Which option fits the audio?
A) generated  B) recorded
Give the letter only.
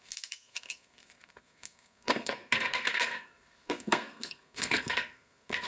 A